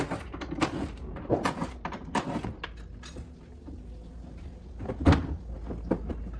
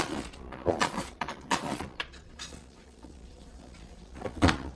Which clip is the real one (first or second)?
first